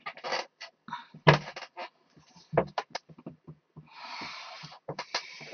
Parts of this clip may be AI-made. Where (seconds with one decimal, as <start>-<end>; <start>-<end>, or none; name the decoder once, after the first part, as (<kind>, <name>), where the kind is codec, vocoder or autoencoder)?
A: none